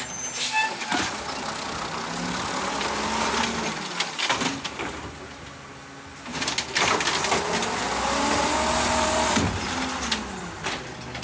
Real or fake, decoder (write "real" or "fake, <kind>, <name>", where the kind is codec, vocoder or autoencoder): real